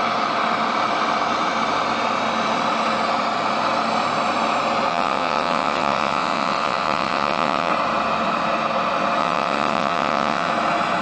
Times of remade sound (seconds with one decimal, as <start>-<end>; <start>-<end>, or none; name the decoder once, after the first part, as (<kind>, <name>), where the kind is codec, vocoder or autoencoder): 4.9-7.7 (vocoder, WaveNeXt); 9.2-10.5